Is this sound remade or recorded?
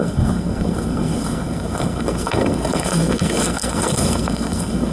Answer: remade